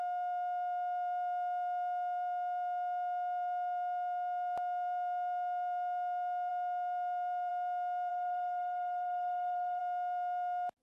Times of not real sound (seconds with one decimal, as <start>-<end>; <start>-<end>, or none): 8.1-9.8